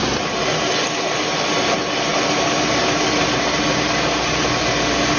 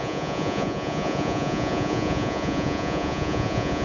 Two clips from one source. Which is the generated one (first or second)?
second